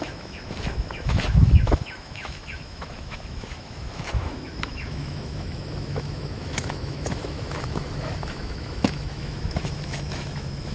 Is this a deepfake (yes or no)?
yes